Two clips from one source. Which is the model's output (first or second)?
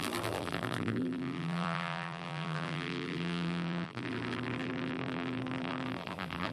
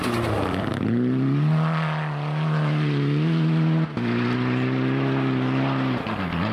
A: first